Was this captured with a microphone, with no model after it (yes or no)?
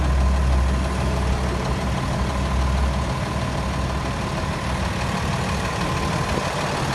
yes